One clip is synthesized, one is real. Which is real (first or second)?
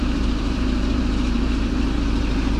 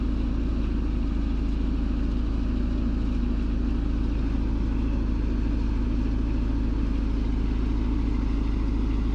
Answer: second